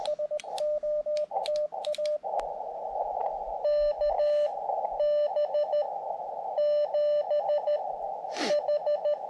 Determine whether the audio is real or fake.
real